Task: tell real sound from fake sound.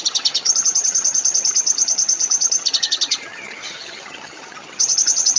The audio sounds fake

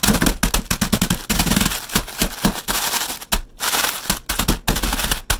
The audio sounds real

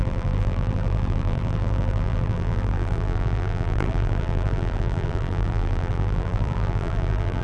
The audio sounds fake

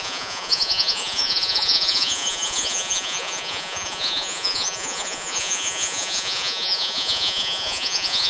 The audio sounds fake